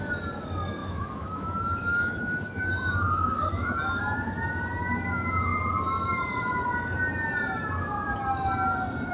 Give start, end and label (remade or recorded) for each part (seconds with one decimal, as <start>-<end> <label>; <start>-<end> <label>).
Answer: 0.0-0.8 recorded; 0.8-4.0 remade; 4.0-9.1 recorded